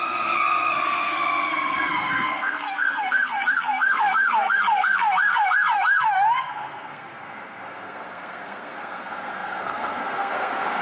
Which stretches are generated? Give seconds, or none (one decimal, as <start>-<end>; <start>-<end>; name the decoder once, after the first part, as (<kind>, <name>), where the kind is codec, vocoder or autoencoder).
0.0-10.8 (codec, SNAC)